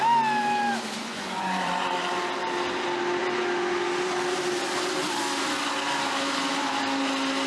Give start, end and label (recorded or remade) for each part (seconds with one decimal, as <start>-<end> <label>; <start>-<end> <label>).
0.0-1.0 recorded; 1.0-1.9 remade; 1.9-7.5 recorded